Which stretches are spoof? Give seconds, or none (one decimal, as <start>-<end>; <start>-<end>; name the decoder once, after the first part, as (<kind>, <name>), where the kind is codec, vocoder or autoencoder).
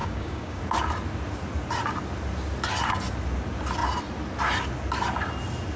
0.0-0.6 (codec, DAC)